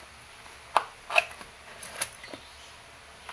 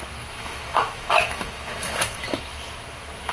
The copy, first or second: second